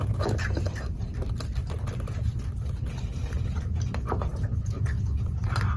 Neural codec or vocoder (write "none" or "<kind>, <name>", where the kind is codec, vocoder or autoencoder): none